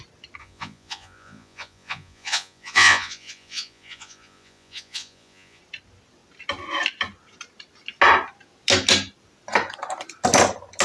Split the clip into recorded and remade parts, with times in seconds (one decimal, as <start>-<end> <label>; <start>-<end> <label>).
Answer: 0.0-0.4 recorded; 0.4-5.6 remade; 5.6-10.8 recorded